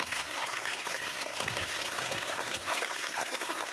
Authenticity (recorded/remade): remade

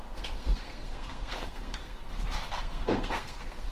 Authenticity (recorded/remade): remade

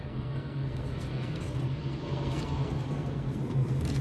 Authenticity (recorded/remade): remade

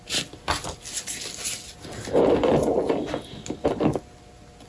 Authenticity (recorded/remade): recorded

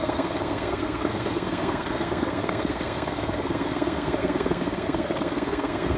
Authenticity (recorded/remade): remade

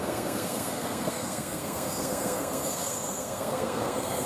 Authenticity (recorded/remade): remade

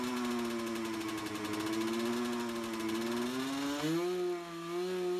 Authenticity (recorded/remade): recorded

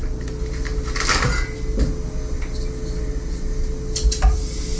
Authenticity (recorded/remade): recorded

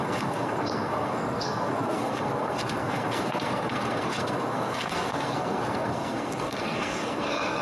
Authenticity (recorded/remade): remade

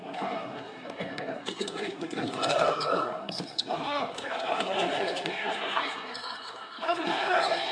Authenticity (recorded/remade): remade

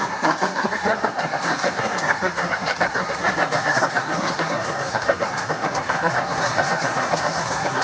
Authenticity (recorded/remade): remade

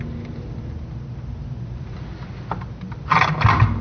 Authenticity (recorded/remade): recorded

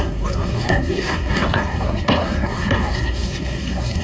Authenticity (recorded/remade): remade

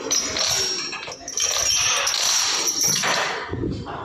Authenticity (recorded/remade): recorded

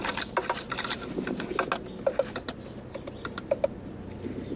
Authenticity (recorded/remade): recorded